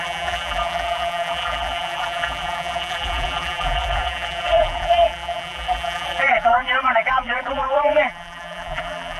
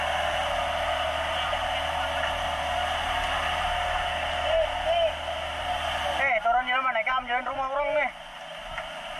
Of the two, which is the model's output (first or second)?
first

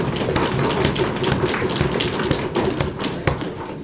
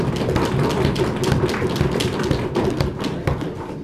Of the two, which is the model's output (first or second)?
first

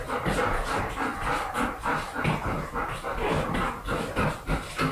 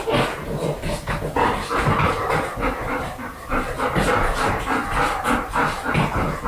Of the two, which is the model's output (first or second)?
first